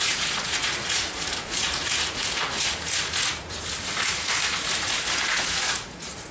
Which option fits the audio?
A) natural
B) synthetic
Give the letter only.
B